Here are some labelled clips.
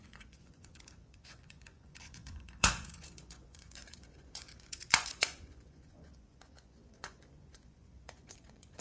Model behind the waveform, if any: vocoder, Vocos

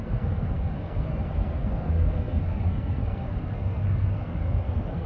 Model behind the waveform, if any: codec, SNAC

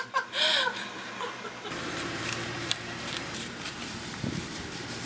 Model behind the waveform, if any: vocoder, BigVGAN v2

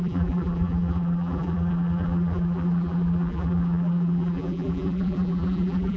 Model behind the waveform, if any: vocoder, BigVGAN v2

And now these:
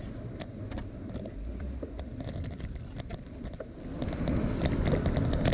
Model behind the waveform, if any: none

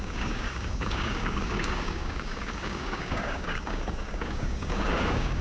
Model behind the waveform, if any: codec, DAC